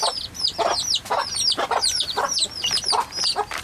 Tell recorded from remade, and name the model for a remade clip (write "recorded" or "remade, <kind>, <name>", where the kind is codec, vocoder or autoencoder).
remade, vocoder, BigVGAN v2